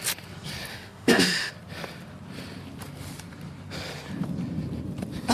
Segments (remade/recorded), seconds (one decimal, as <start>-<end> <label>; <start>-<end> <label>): 0.0-0.7 recorded; 0.7-1.5 remade; 1.5-5.3 recorded